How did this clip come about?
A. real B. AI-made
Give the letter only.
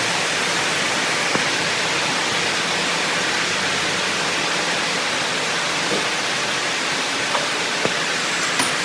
A